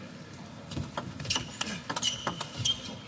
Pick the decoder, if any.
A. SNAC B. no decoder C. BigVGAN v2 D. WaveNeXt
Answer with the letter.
B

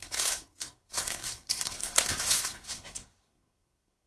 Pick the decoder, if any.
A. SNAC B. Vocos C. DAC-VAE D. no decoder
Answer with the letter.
A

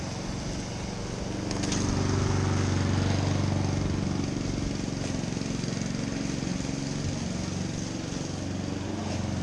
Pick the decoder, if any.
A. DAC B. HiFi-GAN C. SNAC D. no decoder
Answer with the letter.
D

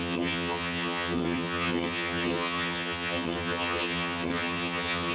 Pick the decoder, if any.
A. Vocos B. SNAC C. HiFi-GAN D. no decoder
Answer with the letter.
C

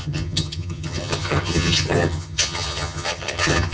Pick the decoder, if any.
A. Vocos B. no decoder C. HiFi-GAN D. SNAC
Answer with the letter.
C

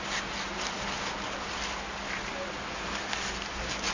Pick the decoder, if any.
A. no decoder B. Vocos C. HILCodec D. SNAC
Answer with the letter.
A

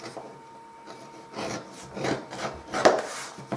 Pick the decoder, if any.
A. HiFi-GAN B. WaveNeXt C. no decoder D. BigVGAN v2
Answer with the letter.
D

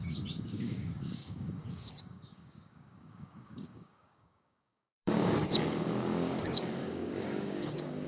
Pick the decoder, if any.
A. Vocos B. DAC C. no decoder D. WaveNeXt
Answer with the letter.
B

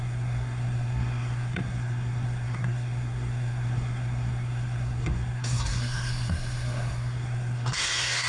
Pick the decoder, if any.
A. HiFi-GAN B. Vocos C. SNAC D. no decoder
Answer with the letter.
C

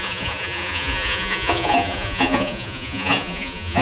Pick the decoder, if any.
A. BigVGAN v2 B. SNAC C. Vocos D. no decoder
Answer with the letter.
C